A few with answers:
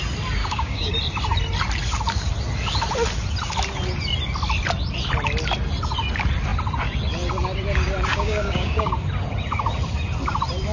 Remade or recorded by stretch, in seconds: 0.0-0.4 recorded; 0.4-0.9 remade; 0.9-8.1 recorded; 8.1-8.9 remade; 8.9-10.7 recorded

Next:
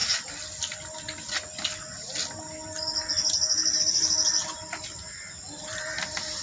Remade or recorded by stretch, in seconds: 0.0-6.4 recorded

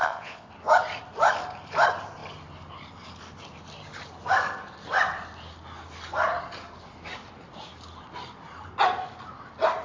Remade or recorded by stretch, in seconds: 0.0-0.5 remade; 0.5-9.8 recorded

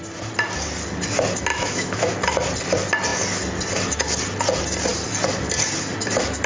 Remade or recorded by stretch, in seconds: 0.0-1.5 recorded; 1.5-2.1 remade; 2.1-6.5 recorded

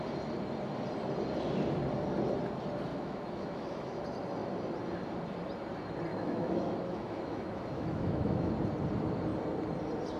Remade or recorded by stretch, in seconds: 0.0-2.9 recorded; 2.9-4.0 remade; 4.0-6.1 recorded; 6.1-8.5 remade; 8.5-10.2 recorded

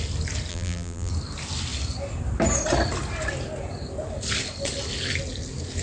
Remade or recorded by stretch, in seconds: 0.0-0.5 recorded; 0.5-1.1 remade; 1.1-5.8 recorded